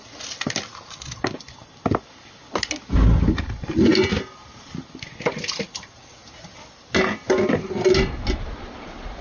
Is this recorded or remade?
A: recorded